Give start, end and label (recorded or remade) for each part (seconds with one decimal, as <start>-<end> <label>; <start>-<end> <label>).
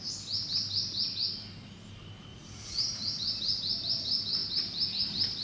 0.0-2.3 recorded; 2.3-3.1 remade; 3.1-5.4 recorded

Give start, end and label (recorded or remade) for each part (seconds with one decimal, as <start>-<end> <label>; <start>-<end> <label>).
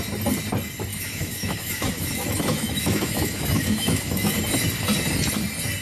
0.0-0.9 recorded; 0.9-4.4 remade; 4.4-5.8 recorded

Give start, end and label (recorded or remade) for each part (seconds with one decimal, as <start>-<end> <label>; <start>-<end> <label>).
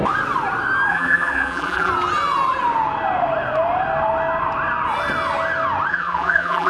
0.0-0.9 recorded; 0.9-1.9 remade; 1.9-5.9 recorded; 5.9-6.7 remade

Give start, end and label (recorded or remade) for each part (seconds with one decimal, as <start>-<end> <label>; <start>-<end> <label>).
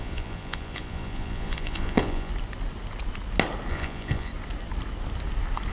0.0-2.3 remade; 2.3-3.7 recorded; 3.7-4.3 remade; 4.3-5.7 recorded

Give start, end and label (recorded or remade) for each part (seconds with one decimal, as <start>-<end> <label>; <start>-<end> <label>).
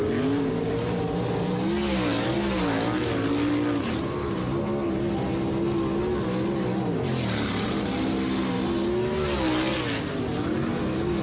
0.0-11.2 recorded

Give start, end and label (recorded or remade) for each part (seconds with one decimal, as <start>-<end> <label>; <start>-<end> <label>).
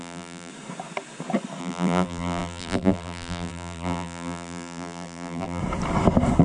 0.0-0.5 remade; 0.5-1.6 recorded; 1.6-5.6 remade; 5.6-6.4 recorded